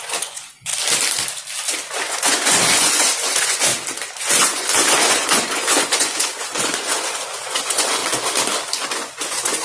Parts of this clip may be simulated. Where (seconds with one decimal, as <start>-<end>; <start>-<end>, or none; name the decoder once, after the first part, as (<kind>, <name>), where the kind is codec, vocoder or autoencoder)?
0.0-0.7 (vocoder, Vocos); 2.0-3.7; 4.2-8.0; 8.8-9.6